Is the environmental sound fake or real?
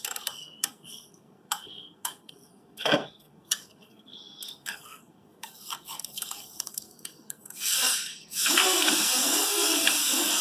fake